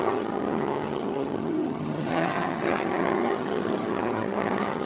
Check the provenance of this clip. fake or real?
fake